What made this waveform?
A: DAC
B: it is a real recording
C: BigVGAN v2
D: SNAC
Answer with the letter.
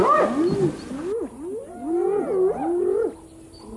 B